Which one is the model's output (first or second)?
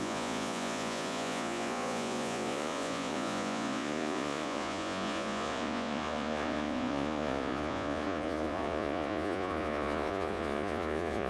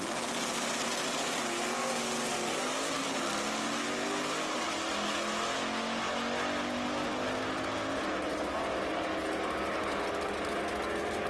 first